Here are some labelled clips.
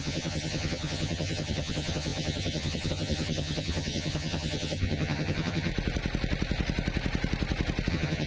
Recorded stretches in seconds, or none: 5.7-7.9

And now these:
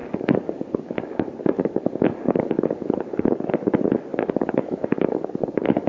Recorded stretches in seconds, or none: 3.5-4.1

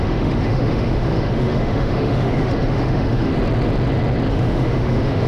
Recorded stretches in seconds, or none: 3.3-4.3